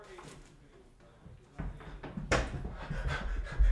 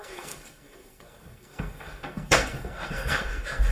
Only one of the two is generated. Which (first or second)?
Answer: second